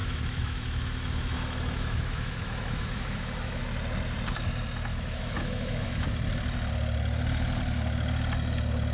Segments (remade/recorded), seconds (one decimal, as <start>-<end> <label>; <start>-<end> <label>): 0.0-3.6 remade; 3.6-4.9 recorded; 4.9-6.1 remade; 6.1-8.9 recorded